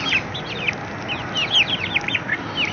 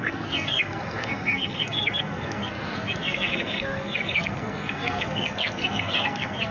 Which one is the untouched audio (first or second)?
first